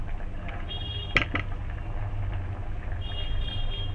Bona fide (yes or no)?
yes